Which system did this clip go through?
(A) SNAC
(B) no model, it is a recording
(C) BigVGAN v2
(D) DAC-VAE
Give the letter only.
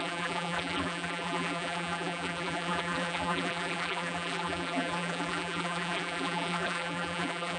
C